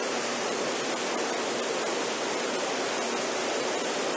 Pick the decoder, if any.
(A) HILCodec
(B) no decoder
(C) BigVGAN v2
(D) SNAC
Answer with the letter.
C